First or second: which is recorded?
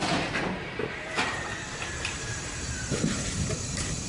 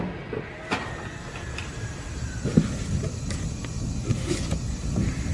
second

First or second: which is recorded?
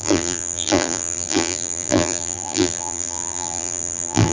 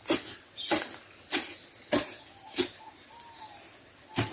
second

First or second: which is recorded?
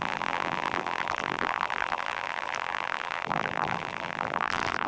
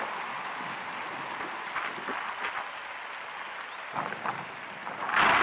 second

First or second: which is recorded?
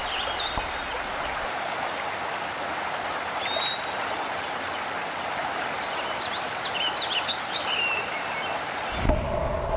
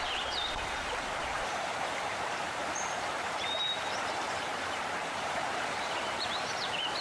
first